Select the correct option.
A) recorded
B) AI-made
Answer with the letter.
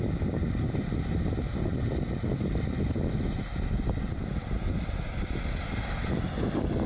A